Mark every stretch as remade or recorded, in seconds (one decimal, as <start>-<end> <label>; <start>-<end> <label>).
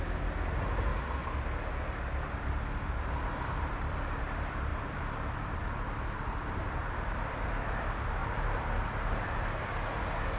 0.0-0.9 remade; 0.9-1.9 recorded; 1.9-8.2 remade; 8.2-10.4 recorded